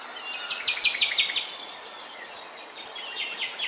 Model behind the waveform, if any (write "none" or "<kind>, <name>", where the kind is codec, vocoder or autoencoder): none